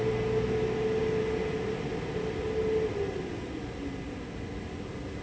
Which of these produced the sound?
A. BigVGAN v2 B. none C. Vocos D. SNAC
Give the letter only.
B